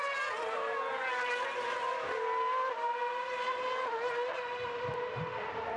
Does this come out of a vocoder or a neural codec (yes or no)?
no